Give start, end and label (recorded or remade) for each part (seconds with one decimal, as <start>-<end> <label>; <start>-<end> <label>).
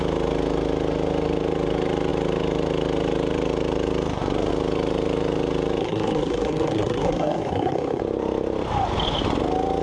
0.0-5.8 recorded; 5.8-8.0 remade; 8.0-9.8 recorded